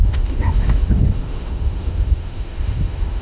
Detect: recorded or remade remade